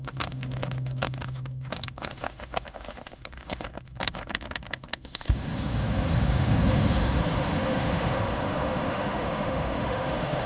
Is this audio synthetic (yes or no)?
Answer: yes